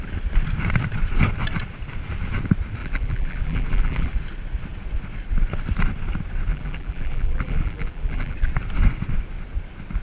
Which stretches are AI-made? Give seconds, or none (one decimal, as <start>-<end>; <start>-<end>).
2.8-4.1; 6.5-8.5